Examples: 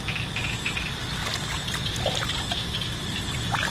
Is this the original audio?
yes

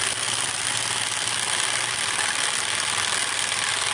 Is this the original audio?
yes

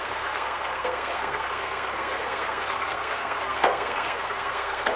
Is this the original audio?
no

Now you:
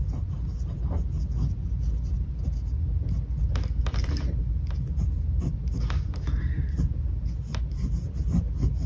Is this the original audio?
yes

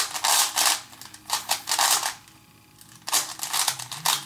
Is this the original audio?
yes